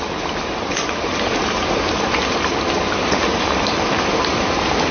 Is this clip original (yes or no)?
yes